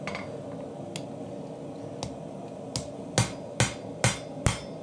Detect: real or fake real